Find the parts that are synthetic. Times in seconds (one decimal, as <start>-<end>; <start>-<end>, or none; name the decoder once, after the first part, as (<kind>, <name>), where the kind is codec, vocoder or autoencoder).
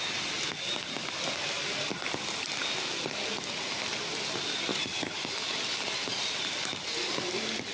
4.7-5.2 (vocoder, Vocos)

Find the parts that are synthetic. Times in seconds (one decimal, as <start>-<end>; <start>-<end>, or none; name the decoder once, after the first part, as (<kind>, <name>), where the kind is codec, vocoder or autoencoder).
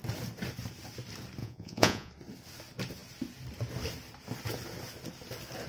1.4-2.1 (vocoder, Vocos)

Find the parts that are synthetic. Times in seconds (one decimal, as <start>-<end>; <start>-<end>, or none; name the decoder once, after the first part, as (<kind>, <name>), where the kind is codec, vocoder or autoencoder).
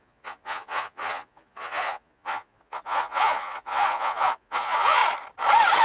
0.0-5.0 (vocoder, Vocos)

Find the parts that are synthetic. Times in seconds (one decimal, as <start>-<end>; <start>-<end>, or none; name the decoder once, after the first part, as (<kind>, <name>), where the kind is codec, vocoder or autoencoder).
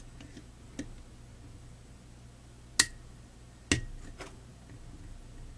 none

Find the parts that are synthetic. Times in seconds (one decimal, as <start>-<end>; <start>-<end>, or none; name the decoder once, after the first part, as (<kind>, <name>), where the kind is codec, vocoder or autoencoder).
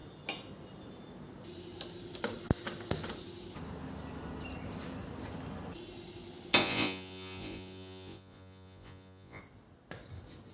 6.6-9.4 (vocoder, Vocos)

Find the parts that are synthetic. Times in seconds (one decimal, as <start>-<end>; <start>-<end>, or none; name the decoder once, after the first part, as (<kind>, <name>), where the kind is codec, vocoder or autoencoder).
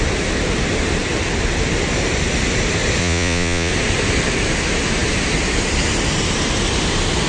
3.0-3.7 (vocoder, Vocos)